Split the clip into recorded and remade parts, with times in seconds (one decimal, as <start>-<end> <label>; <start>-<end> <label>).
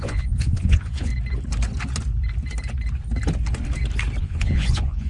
0.0-1.1 remade; 1.1-4.2 recorded; 4.2-5.1 remade